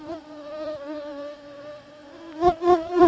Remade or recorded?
remade